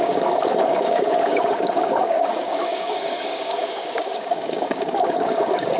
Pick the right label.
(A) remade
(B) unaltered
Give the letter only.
A